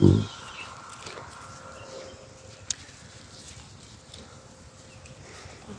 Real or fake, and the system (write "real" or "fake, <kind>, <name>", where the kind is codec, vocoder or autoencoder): real